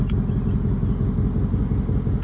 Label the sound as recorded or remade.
recorded